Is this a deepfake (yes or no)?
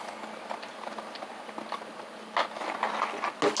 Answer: no